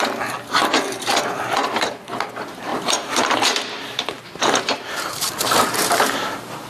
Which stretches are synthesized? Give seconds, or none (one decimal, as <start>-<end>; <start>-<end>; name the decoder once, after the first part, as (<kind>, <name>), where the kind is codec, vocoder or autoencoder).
0.0-6.7 (vocoder, BigVGAN v2)